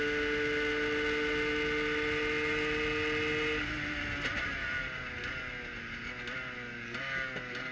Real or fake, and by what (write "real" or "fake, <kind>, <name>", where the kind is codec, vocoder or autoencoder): real